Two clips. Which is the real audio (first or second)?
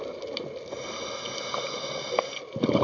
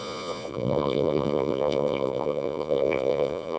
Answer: first